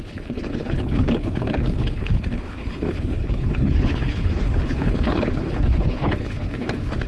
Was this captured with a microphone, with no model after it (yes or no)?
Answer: no